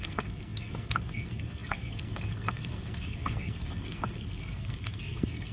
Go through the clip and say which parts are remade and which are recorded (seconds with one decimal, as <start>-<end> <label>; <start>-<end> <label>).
0.0-5.5 remade